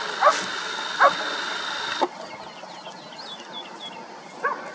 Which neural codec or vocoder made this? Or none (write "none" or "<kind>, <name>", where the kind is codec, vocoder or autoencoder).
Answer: none